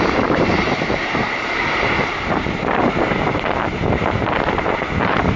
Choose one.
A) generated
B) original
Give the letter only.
A